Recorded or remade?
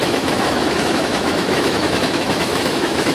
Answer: remade